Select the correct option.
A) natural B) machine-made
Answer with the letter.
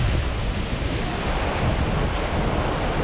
A